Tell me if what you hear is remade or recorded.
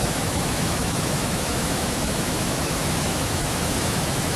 remade